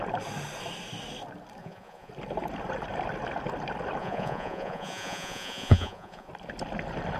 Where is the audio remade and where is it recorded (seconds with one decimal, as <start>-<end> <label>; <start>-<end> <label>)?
0.0-1.6 recorded; 1.6-2.1 remade; 2.1-4.0 recorded; 4.0-6.3 remade; 6.3-7.2 recorded